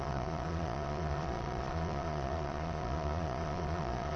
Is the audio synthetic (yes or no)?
yes